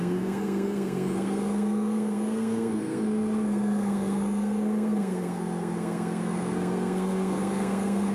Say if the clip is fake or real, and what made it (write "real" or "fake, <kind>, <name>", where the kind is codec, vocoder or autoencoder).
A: fake, codec, SNAC